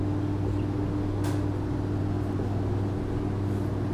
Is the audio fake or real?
real